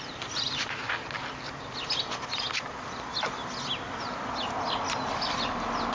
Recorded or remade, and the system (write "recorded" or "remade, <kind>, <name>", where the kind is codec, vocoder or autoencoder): recorded